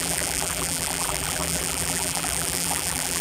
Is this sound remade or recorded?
remade